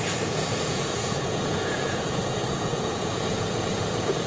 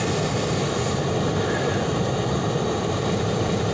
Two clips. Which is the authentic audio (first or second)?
second